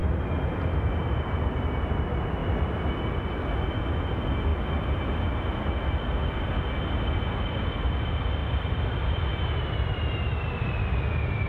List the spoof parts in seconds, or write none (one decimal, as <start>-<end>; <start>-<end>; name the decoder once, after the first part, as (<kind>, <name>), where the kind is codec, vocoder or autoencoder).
2.4-2.9 (vocoder, BigVGAN v2); 4.5-5.0; 8.4-9.2